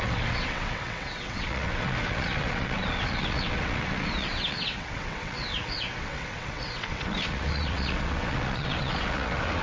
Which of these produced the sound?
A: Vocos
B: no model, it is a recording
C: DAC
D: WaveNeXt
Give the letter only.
D